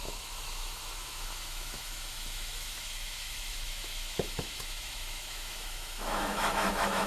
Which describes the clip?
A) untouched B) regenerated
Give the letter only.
B